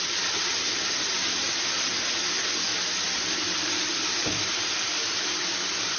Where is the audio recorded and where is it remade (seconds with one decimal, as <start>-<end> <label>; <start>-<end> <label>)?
0.0-6.0 recorded